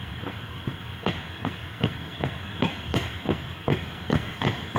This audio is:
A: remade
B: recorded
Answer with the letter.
A